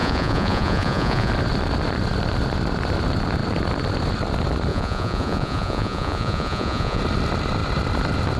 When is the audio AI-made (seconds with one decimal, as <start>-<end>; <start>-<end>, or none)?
0.0-1.3; 4.7-7.0